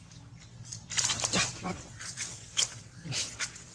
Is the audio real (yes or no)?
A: yes